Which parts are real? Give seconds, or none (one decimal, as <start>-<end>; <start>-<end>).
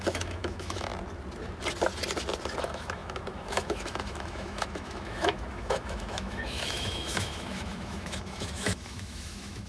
0.9-2.6